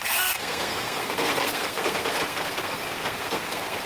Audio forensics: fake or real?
fake